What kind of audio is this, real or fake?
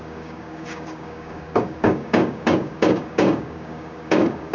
fake